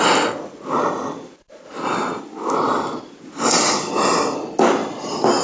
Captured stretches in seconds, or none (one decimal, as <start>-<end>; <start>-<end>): 0.0-5.4